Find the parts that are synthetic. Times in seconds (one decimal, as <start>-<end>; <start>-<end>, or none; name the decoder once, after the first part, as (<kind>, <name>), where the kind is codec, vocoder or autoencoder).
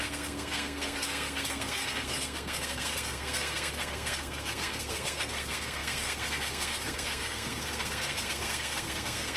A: 0.0-9.4 (codec, SNAC)